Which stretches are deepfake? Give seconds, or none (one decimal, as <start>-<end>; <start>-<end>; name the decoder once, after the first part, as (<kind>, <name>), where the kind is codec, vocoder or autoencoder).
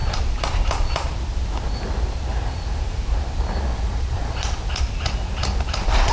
3.7-4.8 (vocoder, Vocos)